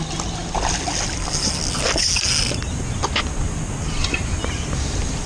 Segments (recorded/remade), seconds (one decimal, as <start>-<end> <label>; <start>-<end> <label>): 0.0-5.3 recorded